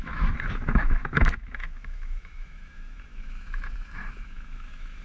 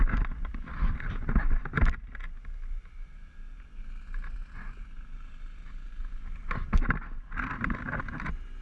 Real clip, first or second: second